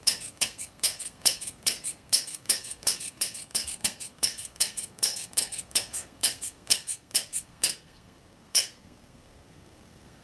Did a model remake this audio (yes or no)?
yes